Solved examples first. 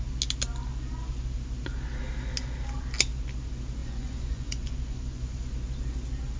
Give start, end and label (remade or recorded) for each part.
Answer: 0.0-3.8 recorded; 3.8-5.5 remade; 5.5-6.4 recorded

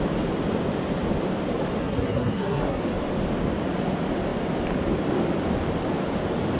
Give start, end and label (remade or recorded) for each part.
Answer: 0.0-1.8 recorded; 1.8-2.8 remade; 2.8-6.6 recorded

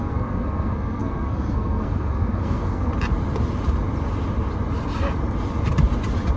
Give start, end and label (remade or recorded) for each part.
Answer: 0.0-2.9 remade; 2.9-6.4 recorded